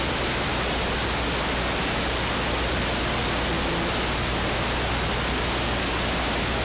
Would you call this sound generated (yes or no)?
no